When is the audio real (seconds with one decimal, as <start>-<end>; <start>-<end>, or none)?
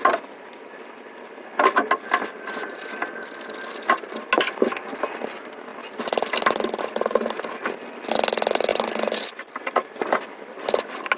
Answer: 0.0-11.2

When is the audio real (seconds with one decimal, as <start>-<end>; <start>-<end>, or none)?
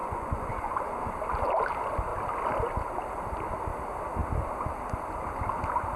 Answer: 1.1-6.0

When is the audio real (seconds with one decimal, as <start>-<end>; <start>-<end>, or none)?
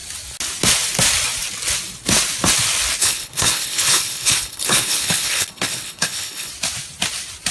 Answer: 0.0-3.0; 6.5-7.5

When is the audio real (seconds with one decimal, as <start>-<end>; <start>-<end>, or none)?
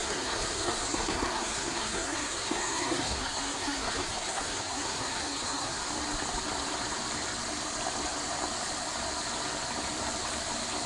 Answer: 5.8-10.9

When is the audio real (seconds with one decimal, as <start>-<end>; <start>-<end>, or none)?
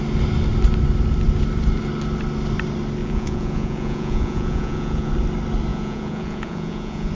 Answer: 0.0-3.0; 5.1-5.7